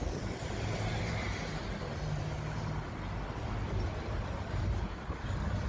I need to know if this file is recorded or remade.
recorded